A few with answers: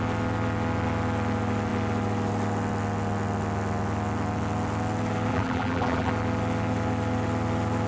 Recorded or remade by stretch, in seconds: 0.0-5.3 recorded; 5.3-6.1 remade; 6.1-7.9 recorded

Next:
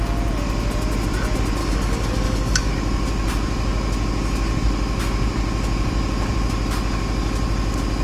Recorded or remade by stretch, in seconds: 0.0-1.6 recorded; 1.6-2.7 remade; 2.7-8.0 recorded

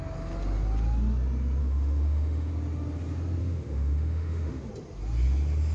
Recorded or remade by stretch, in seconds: 0.0-1.6 recorded; 1.6-2.5 remade; 2.5-3.4 recorded; 3.4-4.7 remade; 4.7-5.7 recorded

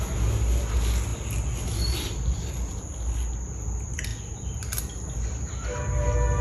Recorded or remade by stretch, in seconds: 0.0-6.4 recorded

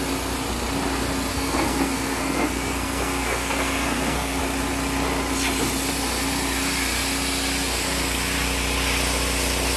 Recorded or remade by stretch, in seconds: 0.0-1.3 recorded; 1.3-4.4 remade; 4.4-9.8 recorded

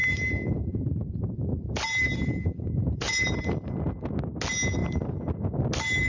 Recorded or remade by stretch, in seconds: 0.0-3.4 remade; 3.4-4.8 recorded; 4.8-5.4 remade; 5.4-6.1 recorded

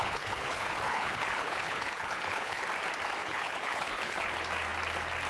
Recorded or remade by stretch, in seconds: 0.0-2.6 remade; 2.6-3.2 recorded; 3.2-4.3 remade; 4.3-5.3 recorded

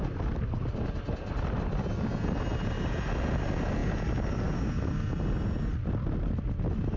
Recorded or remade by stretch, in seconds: 0.0-7.0 recorded